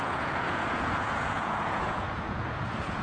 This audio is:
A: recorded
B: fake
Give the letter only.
B